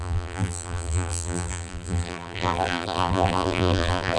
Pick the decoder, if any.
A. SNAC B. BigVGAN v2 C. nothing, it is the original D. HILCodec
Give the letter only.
B